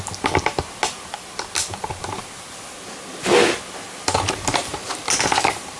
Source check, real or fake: real